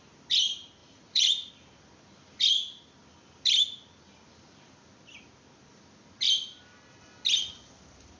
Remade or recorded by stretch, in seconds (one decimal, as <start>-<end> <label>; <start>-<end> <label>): 0.0-0.8 recorded; 0.8-1.5 remade; 1.5-8.2 recorded

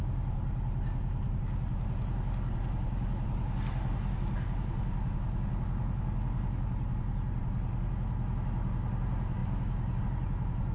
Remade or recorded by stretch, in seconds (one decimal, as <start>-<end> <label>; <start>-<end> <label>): 0.0-10.7 recorded

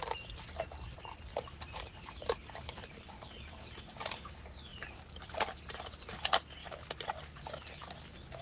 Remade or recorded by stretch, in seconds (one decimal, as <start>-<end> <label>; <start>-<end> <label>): 0.0-1.3 recorded; 1.3-4.3 remade; 4.3-4.7 recorded; 4.7-6.1 remade; 6.1-8.4 recorded

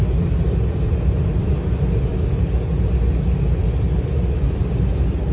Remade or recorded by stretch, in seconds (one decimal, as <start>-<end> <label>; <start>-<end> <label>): 0.0-1.5 remade; 1.5-5.3 recorded

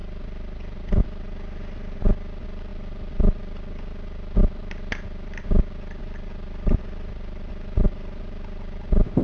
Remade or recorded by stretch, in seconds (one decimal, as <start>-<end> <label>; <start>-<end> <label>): 0.0-9.2 recorded

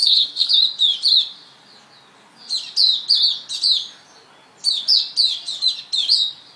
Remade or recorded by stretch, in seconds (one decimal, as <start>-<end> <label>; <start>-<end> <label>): 0.0-0.5 remade; 0.5-6.6 recorded